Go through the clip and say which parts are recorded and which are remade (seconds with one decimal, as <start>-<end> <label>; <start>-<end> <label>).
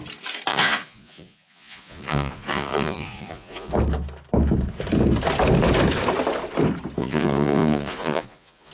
0.0-0.5 recorded; 0.5-3.7 remade; 3.7-7.0 recorded; 7.0-8.7 remade